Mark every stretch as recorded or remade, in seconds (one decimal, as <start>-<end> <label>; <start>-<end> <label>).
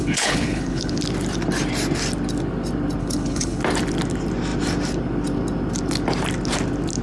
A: 0.0-1.0 remade; 1.0-3.0 recorded; 3.0-3.6 remade; 3.6-7.0 recorded